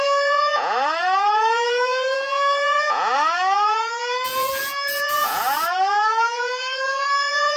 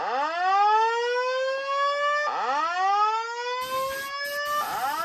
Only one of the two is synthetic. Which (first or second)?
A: first